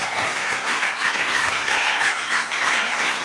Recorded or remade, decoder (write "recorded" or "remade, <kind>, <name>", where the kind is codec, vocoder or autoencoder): remade, codec, SNAC